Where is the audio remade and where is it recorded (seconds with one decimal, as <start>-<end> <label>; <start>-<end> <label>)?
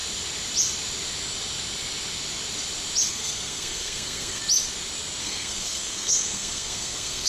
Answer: 0.0-3.1 recorded; 3.1-4.4 remade; 4.4-5.2 recorded; 5.2-7.3 remade